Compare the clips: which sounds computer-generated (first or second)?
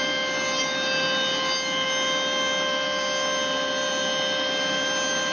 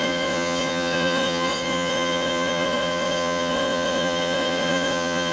second